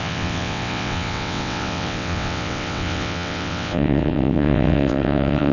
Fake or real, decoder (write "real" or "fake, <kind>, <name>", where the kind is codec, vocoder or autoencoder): fake, vocoder, WaveNeXt